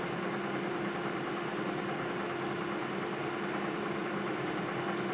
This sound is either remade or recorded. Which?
recorded